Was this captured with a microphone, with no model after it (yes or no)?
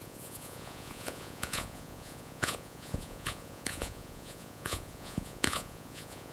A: no